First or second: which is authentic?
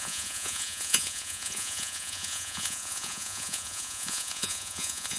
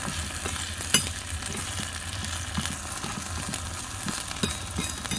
second